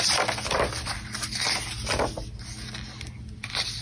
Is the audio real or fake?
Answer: real